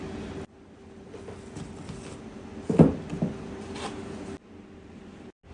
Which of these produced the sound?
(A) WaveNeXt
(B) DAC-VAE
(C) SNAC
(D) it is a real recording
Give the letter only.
D